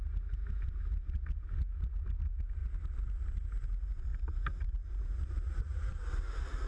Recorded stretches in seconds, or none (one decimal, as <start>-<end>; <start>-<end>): 0.0-2.6; 3.1-4.1